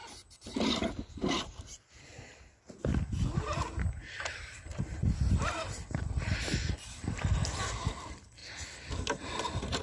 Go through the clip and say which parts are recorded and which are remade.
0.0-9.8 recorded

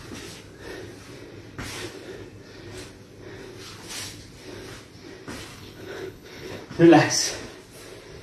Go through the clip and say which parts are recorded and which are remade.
0.0-5.5 recorded; 5.5-6.6 remade; 6.6-8.2 recorded

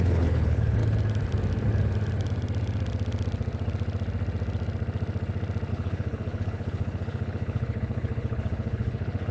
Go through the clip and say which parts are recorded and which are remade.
0.0-0.8 remade; 0.8-5.7 recorded; 5.7-9.3 remade

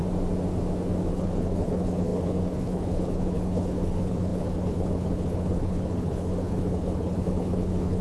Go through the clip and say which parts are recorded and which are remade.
0.0-1.1 recorded; 1.1-8.0 remade

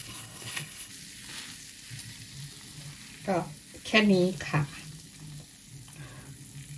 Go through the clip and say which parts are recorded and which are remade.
0.0-0.9 remade; 0.9-6.8 recorded